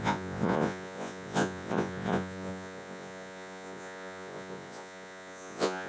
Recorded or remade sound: remade